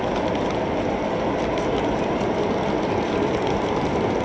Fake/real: real